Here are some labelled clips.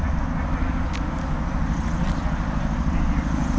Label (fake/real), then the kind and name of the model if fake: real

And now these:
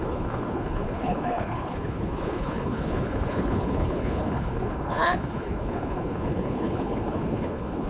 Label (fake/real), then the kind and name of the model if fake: fake, codec, HILCodec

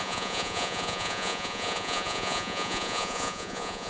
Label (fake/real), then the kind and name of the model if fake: fake, vocoder, Vocos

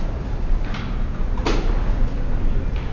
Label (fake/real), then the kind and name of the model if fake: real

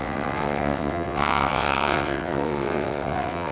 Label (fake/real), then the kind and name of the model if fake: fake, vocoder, WaveNeXt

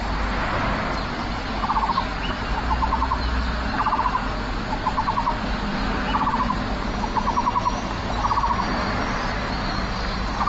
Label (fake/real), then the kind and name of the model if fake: real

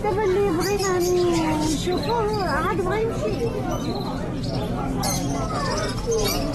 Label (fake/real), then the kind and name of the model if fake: real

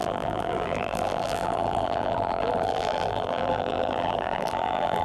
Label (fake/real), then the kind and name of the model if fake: fake, vocoder, BigVGAN v2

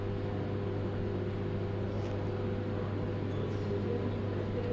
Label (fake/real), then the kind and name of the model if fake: real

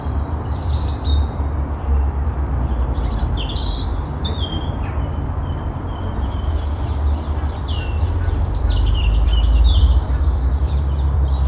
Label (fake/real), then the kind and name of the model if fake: fake, vocoder, BigVGAN v2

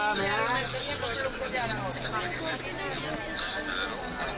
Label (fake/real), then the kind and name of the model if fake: real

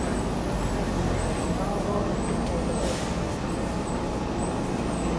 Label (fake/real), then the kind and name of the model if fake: real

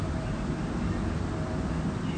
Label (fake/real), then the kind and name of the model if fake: real